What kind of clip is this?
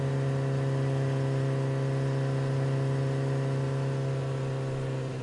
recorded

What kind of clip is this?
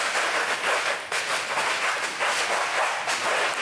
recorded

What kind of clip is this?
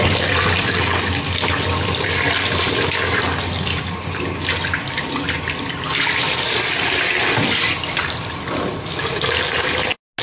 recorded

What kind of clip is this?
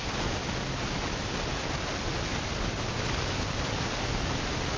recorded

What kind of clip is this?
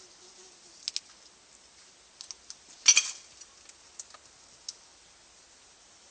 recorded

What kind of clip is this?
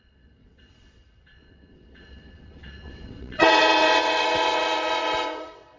remade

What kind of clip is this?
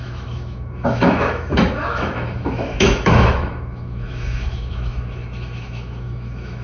remade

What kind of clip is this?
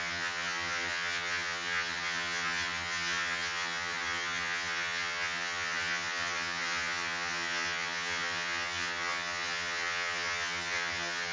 remade